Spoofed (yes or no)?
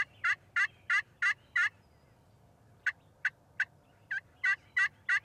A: no